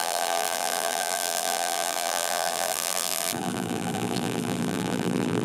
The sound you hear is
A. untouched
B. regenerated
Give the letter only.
B